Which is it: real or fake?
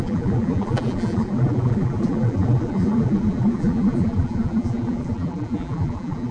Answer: fake